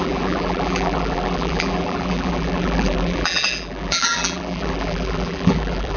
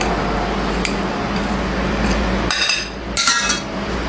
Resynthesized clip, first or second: first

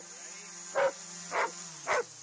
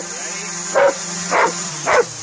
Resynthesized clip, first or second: second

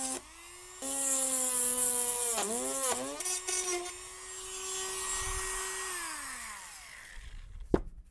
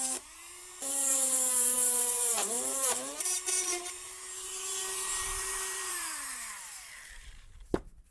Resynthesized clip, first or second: second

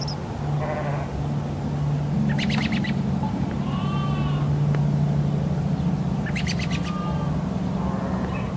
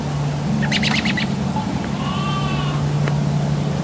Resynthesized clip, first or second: second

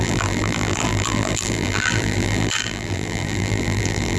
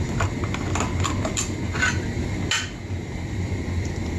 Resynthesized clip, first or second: first